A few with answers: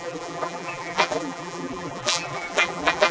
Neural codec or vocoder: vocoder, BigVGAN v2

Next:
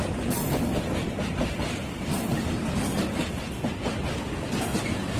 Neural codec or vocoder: none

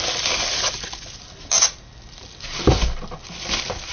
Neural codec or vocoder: none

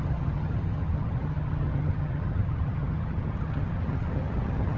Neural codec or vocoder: vocoder, HiFi-GAN